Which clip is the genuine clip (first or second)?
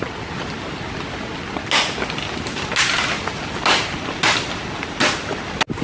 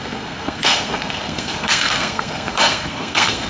first